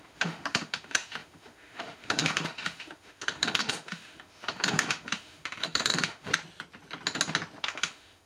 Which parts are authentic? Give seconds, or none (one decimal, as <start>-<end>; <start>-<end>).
6.3-7.6